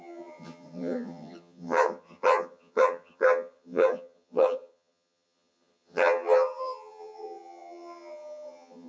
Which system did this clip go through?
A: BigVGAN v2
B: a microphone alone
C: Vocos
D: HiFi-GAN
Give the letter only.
D